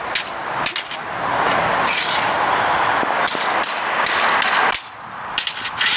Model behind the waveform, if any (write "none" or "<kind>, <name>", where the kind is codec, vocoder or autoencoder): none